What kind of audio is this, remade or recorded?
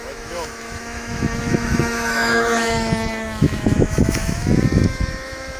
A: remade